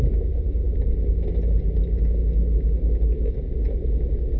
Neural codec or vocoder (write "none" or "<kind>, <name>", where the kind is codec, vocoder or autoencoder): none